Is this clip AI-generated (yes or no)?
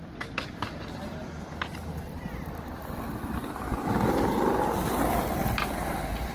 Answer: no